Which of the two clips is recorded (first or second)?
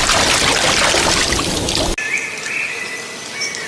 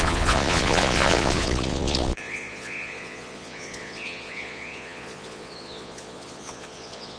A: first